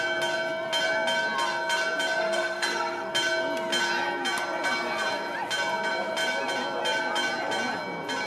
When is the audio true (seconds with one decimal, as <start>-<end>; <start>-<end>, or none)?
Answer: 0.0-2.2; 3.1-8.3

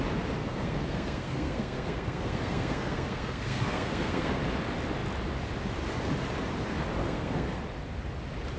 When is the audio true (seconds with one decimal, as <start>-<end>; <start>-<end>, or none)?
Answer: 0.0-0.4; 4.4-7.0; 7.6-8.6

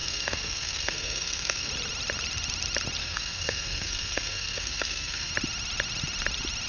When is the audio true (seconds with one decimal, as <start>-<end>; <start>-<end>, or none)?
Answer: 1.7-3.0; 5.3-6.7

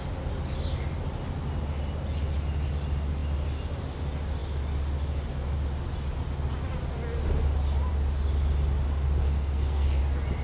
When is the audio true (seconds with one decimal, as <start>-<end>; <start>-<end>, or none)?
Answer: 0.0-9.2; 10.0-10.4

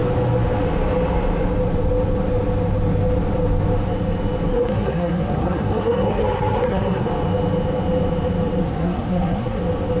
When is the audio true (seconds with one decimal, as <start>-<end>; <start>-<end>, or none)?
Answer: 0.0-4.5; 7.1-8.6; 9.6-10.0